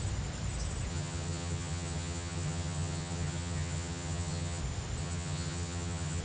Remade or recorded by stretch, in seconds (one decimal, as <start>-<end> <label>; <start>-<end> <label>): 0.0-0.9 recorded; 0.9-4.6 remade; 4.6-5.0 recorded; 5.0-6.2 remade